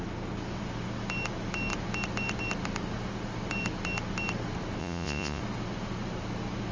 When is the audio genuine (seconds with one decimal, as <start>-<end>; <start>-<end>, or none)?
0.0-4.8; 5.4-6.7